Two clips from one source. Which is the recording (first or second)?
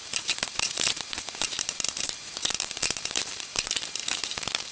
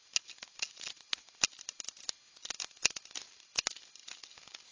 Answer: second